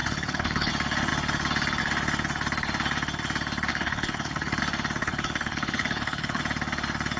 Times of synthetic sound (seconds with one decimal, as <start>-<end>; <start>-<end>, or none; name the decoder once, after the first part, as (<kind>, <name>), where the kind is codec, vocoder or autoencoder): 0.0-0.7 (codec, HILCodec); 3.7-4.6; 5.0-6.4

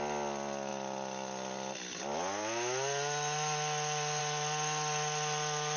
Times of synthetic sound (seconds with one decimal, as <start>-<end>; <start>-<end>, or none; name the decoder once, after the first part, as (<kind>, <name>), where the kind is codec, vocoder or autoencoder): none

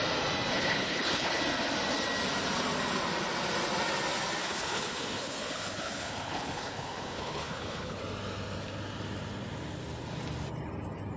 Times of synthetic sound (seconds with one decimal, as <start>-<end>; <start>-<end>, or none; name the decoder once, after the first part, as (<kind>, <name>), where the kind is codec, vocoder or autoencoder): 0.5-1.4 (codec, HILCodec); 4.4-8.0

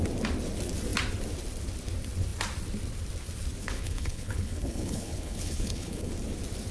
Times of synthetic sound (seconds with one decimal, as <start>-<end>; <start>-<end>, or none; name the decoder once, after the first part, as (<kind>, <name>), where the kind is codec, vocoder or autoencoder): 3.6-6.1 (codec, HILCodec)

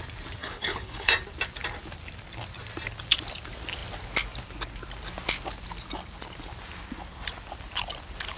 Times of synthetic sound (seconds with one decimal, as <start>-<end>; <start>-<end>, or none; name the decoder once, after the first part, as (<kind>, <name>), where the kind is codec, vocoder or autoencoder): 0.4-1.1 (codec, HILCodec)

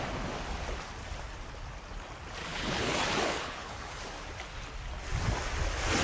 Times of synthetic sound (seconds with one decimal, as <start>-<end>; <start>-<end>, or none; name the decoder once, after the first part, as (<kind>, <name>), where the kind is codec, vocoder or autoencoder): 2.4-4.0 (codec, HILCodec)

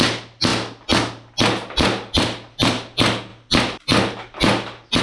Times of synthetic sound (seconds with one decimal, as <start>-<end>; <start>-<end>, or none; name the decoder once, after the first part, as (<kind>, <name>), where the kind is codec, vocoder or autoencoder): none